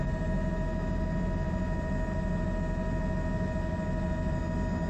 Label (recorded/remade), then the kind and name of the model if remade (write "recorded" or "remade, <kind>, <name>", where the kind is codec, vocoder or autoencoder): recorded